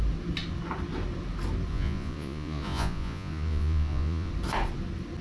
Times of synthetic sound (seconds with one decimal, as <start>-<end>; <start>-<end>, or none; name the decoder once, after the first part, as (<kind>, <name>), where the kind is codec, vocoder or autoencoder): 1.7-4.3 (vocoder, Vocos)